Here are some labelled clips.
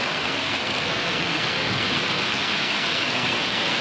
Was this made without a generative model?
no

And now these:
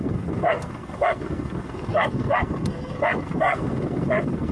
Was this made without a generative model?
no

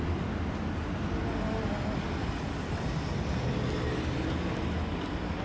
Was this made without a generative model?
yes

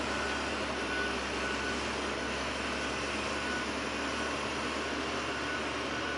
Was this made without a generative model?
yes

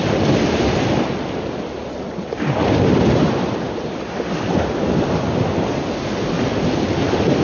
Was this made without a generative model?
yes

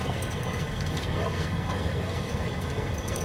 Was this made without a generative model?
no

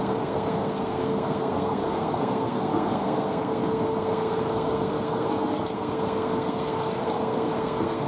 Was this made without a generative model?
no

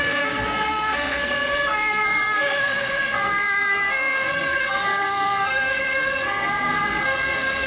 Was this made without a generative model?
no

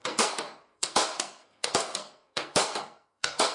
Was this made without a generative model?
no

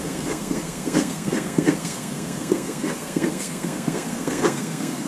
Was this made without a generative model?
no